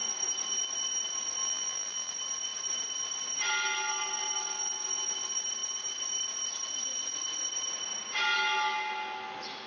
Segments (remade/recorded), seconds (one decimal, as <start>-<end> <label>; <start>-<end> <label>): 0.0-1.4 recorded; 1.4-2.1 remade; 2.1-9.7 recorded